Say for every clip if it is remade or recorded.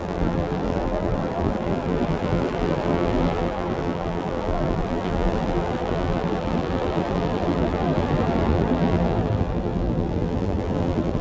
remade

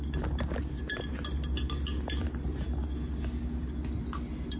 recorded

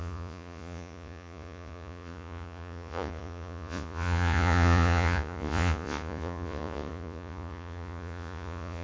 remade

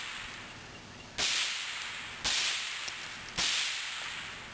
recorded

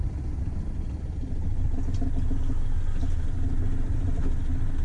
recorded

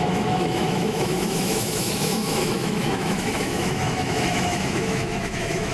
remade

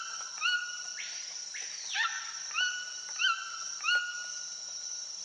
recorded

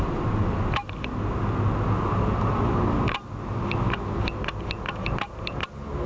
recorded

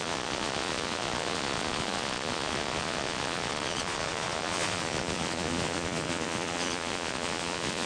remade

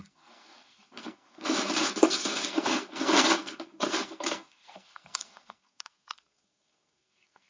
remade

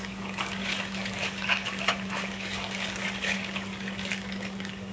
remade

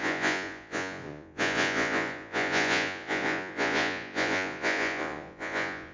remade